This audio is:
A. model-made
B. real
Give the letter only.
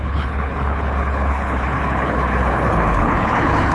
A